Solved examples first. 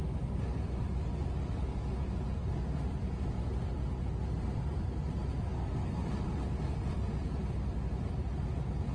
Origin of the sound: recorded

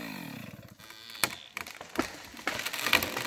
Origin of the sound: recorded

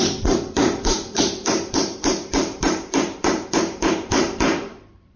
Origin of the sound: remade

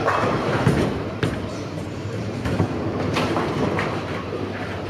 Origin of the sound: remade